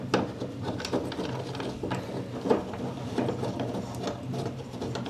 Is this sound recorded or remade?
recorded